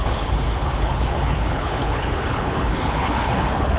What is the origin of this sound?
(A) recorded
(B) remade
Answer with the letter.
B